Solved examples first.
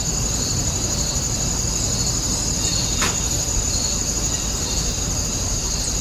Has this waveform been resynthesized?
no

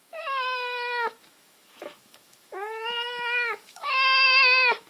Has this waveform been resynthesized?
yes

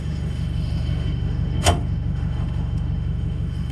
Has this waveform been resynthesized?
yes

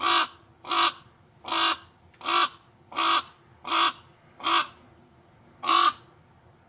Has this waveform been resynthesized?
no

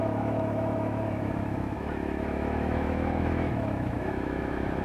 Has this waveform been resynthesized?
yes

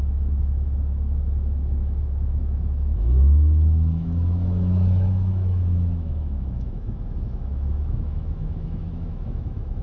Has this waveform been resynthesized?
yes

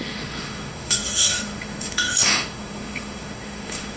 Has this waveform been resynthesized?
yes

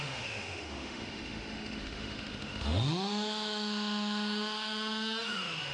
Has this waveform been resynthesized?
yes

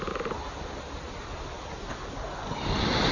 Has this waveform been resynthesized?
no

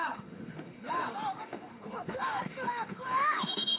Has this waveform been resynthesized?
yes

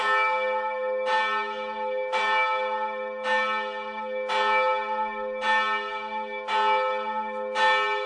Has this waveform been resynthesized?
no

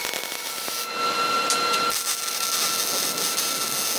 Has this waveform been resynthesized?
no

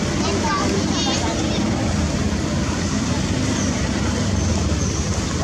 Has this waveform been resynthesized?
no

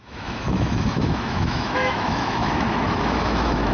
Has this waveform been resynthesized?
yes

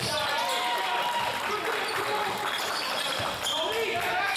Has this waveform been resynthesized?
no